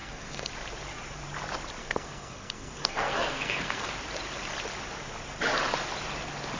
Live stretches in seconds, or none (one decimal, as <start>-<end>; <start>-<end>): 0.5-1.8; 3.9-6.6